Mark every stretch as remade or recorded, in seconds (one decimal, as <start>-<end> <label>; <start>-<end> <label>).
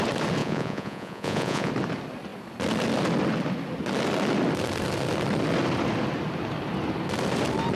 0.0-0.4 recorded; 0.4-1.7 remade; 1.7-7.8 recorded